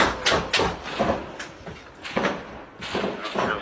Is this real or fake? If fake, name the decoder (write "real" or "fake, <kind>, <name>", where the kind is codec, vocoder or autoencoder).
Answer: real